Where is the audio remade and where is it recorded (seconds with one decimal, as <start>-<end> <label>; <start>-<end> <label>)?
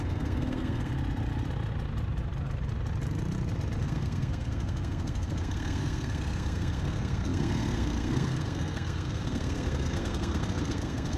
0.0-0.9 remade; 0.9-3.8 recorded; 3.8-11.2 remade